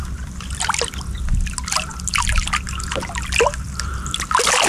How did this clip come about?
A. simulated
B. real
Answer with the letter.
B